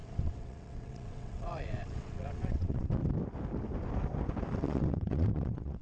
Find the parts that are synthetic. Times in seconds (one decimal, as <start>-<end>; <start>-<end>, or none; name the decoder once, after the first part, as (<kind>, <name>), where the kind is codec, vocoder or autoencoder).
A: 0.0-3.0 (vocoder, WaveNeXt); 4.6-5.8